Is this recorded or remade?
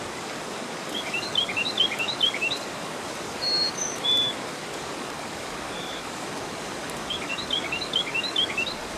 remade